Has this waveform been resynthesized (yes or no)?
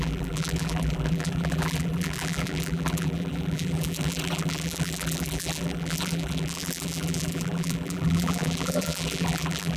yes